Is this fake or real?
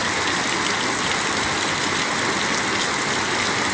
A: real